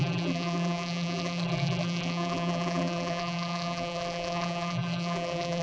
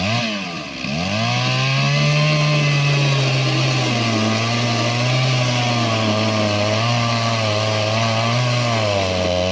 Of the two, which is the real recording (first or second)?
second